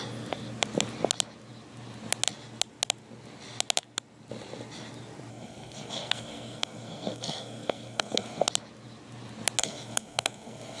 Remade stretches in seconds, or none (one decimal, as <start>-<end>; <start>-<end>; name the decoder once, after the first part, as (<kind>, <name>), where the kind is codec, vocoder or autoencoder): 5.3-8.5 (codec, SNAC); 9.6-10.8